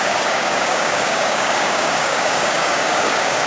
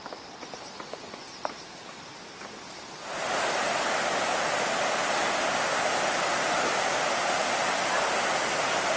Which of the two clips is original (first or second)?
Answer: second